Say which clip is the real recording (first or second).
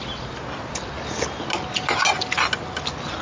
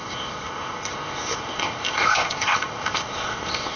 first